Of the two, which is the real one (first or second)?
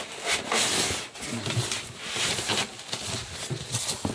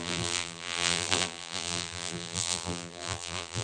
first